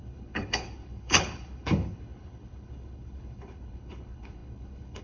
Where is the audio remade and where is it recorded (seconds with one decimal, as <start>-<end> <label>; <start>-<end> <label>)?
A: 0.0-5.0 remade